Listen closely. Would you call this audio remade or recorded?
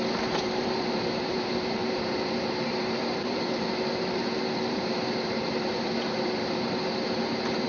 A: remade